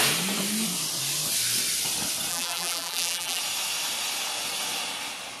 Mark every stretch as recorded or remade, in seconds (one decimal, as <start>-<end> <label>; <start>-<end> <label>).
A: 0.0-2.3 recorded; 2.3-3.4 remade; 3.4-5.4 recorded